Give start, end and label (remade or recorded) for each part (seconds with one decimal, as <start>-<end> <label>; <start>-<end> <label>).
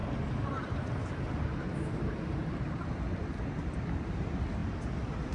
0.0-3.2 remade; 3.2-5.3 recorded